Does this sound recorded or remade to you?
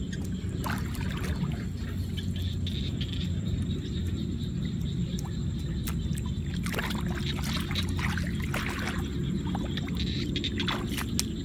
recorded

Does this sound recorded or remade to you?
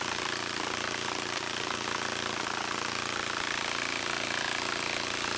recorded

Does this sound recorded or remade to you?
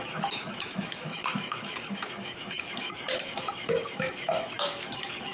remade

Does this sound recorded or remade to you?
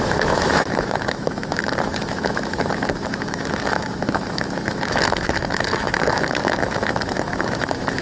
remade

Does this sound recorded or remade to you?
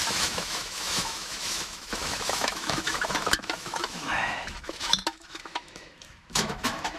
remade